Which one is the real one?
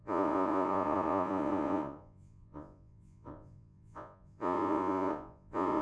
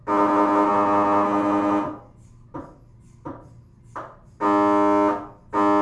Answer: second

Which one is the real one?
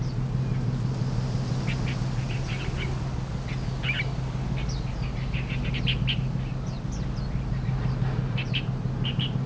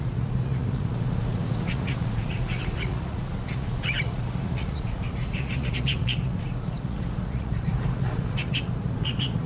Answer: first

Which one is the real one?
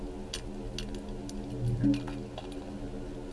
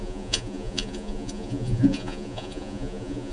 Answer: first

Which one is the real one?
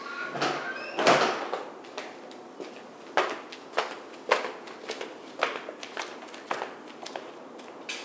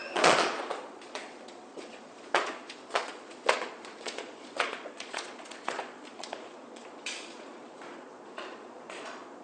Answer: first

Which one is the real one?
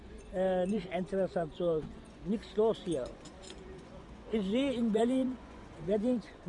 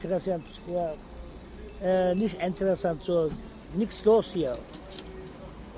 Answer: second